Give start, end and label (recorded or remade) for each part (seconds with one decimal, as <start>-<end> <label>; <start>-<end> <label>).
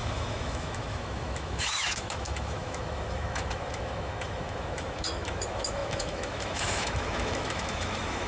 0.0-8.3 remade